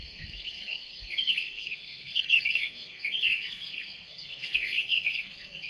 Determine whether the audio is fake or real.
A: fake